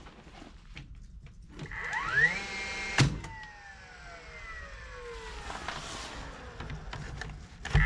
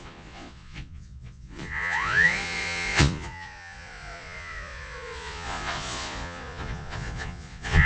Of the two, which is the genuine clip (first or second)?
first